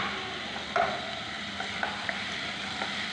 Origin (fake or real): real